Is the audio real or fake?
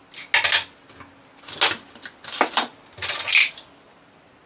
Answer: real